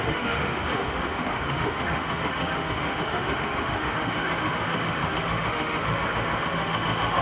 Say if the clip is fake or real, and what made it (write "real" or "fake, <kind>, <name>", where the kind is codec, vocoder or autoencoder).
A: fake, autoencoder, DAC-VAE